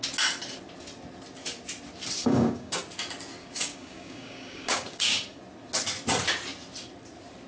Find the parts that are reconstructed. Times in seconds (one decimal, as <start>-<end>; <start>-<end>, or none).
2.2-2.8; 3.4-5.4